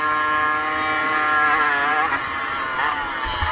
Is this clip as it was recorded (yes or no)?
yes